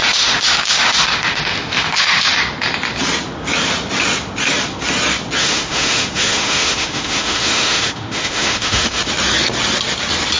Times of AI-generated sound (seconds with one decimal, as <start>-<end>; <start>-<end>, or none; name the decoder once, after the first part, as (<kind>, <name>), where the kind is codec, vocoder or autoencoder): 0.0-2.4 (autoencoder, DAC-VAE); 5.4-9.0